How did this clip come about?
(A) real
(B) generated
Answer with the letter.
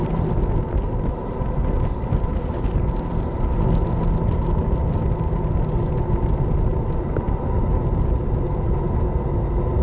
A